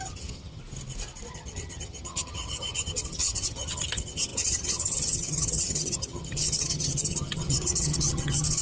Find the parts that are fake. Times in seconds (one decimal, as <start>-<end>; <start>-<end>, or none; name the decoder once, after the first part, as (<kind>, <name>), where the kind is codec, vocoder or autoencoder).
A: 0.0-0.6 (vocoder, HiFi-GAN); 1.3-8.6